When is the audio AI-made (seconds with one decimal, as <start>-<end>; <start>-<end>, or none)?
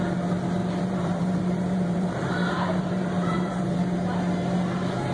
0.6-3.6